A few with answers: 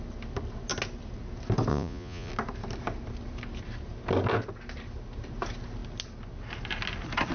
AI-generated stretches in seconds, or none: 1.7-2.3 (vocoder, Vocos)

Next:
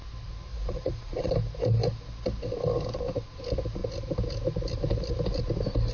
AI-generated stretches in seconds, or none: 0.5-1.3 (vocoder, Vocos)

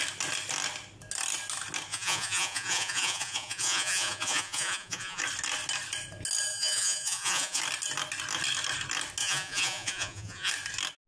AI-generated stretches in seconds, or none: 1.9-5.2 (vocoder, Vocos); 6.5-7.6; 9.2-10.5

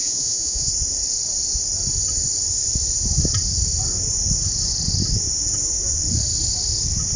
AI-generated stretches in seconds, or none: 0.0-0.7 (vocoder, Vocos)